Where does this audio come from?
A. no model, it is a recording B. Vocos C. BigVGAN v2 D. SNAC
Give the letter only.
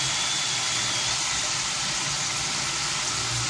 A